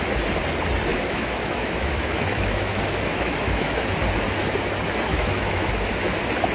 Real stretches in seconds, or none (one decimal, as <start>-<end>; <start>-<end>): 0.0-0.9; 3.9-5.1; 5.7-6.5